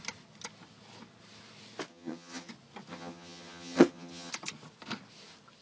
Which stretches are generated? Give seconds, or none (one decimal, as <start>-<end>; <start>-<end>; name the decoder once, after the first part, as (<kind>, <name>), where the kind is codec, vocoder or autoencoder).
1.9-2.5 (vocoder, HiFi-GAN); 2.9-4.3